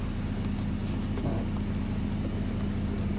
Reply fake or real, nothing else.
real